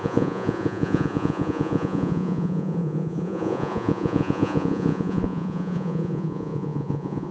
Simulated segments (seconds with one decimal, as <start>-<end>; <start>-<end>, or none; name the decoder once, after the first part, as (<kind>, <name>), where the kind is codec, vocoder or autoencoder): 0.0-7.3 (vocoder, Vocos)